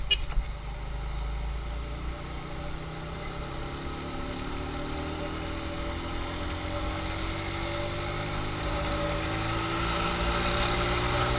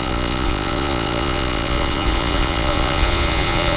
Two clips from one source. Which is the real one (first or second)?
first